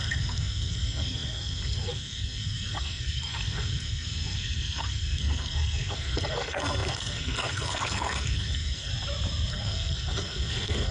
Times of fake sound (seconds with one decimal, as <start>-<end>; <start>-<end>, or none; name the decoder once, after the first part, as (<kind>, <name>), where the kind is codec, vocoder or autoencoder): 0.0-8.9 (codec, SNAC); 9.5-10.9